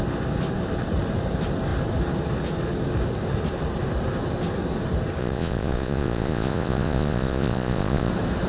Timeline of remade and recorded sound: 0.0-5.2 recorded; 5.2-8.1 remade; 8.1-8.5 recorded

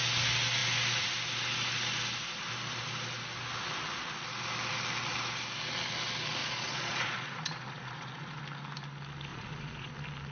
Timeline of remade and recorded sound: 0.0-6.4 recorded; 6.4-8.4 remade; 8.4-9.3 recorded; 9.3-9.9 remade; 9.9-10.3 recorded

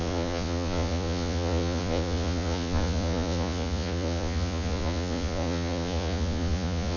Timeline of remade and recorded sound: 0.0-7.0 remade

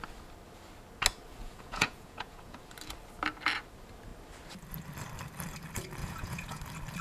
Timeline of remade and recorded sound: 0.0-1.4 recorded; 1.4-2.6 remade; 2.6-6.0 recorded; 6.0-6.6 remade; 6.6-7.0 recorded

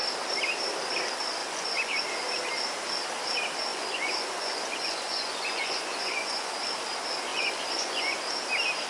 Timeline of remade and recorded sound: 0.0-1.4 recorded; 1.4-2.0 remade; 2.0-3.7 recorded; 3.7-6.5 remade; 6.5-7.3 recorded; 7.3-8.2 remade; 8.2-8.9 recorded

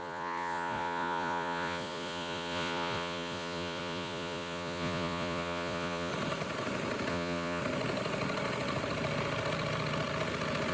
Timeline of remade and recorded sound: 0.0-6.1 remade; 6.1-7.1 recorded; 7.1-7.6 remade; 7.6-10.7 recorded

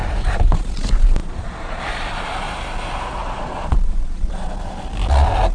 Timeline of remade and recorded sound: 0.0-1.2 recorded; 1.2-1.8 remade; 1.8-3.2 recorded; 3.2-4.5 remade; 4.5-5.5 recorded